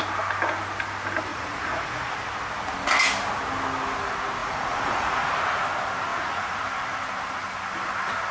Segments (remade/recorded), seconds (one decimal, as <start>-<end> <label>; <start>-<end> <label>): 0.0-1.3 recorded; 1.3-2.2 remade; 2.2-4.4 recorded; 4.4-5.3 remade; 5.3-6.1 recorded; 6.1-6.6 remade; 6.6-8.3 recorded